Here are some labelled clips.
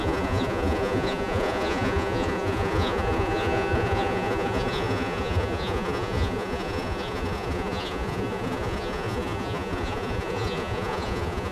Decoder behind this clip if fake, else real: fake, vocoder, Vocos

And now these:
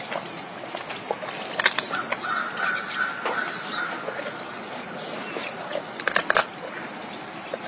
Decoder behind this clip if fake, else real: real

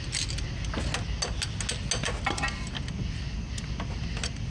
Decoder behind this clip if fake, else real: real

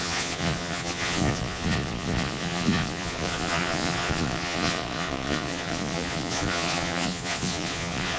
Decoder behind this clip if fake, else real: fake, vocoder, Vocos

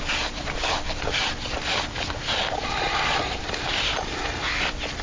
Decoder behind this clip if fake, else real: real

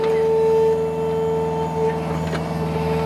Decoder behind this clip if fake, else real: real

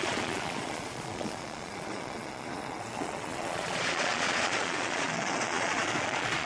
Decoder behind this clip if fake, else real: fake, vocoder, Vocos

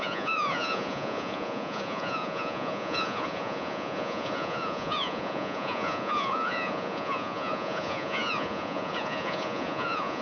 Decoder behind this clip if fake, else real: fake, vocoder, Vocos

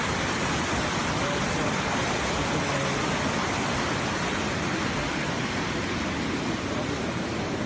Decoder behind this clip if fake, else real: real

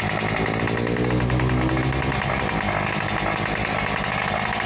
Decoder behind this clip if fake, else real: real